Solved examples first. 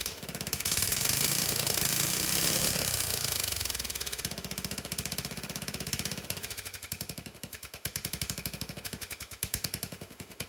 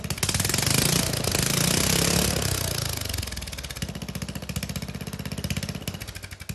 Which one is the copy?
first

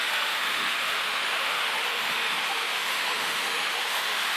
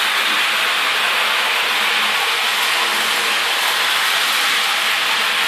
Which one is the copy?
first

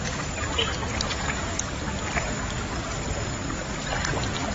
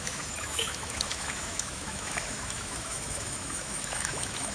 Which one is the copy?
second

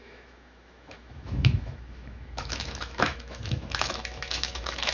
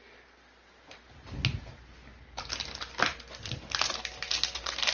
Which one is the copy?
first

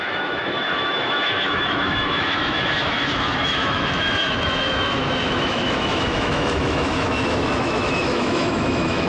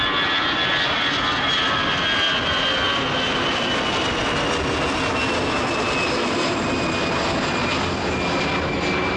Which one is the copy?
first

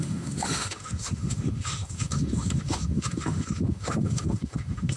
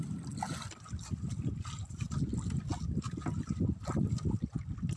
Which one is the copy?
first